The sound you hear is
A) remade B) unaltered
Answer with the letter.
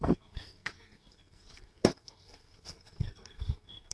A